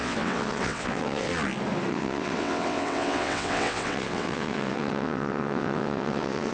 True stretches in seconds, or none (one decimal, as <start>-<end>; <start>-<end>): 1.3-1.9